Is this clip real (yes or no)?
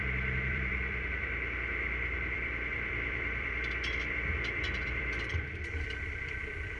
no